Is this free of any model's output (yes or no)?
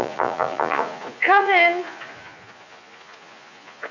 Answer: no